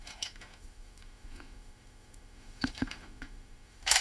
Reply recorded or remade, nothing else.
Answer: remade